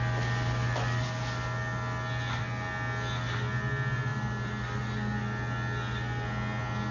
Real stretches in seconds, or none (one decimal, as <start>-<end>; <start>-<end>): 0.0-6.9